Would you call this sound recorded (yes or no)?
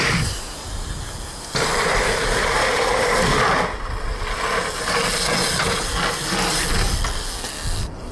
yes